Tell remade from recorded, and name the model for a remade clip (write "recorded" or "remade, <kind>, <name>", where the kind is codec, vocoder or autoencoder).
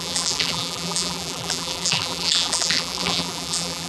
remade, vocoder, BigVGAN v2